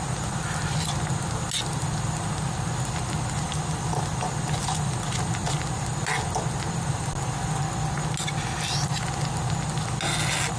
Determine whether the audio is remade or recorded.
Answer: recorded